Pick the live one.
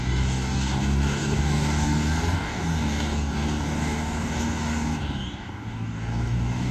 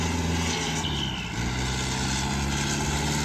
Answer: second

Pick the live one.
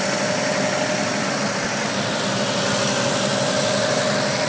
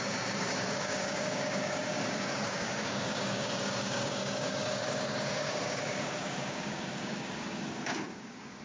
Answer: first